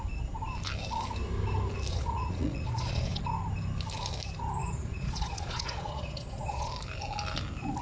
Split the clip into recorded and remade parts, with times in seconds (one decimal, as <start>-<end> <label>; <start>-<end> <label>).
0.0-1.9 recorded; 1.9-3.2 remade; 3.2-4.6 recorded; 4.6-6.7 remade; 6.7-7.8 recorded